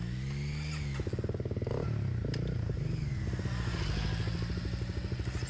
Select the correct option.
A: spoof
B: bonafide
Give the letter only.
B